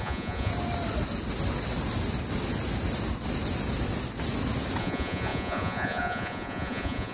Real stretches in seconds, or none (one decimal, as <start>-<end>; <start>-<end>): 0.5-4.8